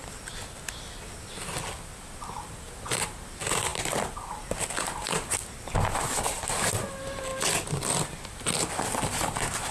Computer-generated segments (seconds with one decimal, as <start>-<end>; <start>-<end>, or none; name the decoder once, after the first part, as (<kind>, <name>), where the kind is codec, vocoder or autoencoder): none